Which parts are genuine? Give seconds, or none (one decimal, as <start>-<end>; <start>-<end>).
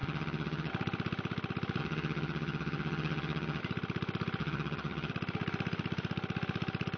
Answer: 0.7-1.8; 3.6-4.4; 5.1-7.0